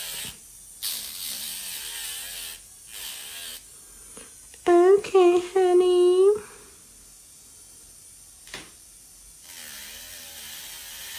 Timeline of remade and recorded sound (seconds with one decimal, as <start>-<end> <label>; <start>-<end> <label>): 0.0-11.2 recorded